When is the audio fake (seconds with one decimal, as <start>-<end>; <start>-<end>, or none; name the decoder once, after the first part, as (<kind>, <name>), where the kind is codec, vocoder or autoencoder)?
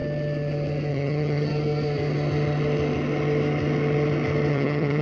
0.9-1.5 (vocoder, HiFi-GAN); 4.5-5.0